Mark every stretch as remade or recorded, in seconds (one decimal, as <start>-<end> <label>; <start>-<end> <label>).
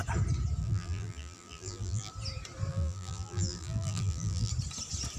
0.0-0.6 recorded; 0.6-2.1 remade; 2.1-2.7 recorded; 2.7-4.5 remade; 4.5-5.2 recorded